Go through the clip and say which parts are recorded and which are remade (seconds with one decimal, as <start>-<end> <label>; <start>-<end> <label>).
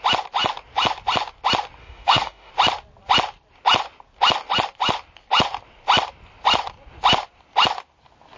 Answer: 0.0-1.8 recorded; 1.8-2.5 remade; 2.5-8.4 recorded